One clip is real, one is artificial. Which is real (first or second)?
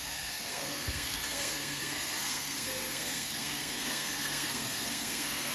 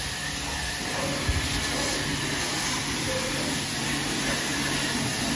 second